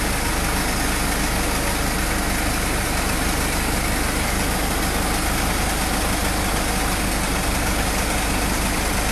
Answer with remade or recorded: recorded